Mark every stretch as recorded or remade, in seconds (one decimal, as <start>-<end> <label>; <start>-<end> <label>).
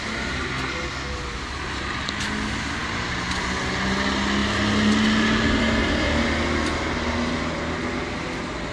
0.0-8.7 recorded